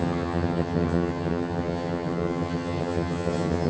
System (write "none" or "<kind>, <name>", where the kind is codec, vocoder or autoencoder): vocoder, HiFi-GAN